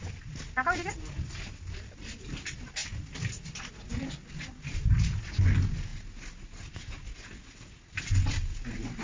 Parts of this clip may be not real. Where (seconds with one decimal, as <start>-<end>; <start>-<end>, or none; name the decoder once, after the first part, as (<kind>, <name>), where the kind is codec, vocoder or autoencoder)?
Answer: none